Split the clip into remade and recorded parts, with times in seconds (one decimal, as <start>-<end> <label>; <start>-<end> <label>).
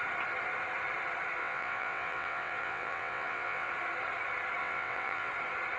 0.0-1.4 recorded; 1.4-3.7 remade; 3.7-4.6 recorded; 4.6-5.3 remade; 5.3-5.8 recorded